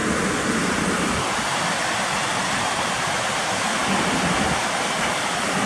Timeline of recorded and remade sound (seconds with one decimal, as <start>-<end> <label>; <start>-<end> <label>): 0.0-5.7 recorded